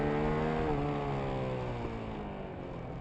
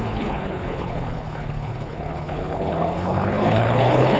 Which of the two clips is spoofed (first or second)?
second